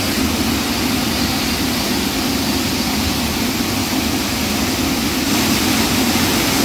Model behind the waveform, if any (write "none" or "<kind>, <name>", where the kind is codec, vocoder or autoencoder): none